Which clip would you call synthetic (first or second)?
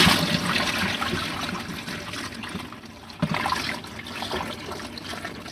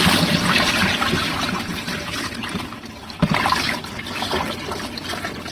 second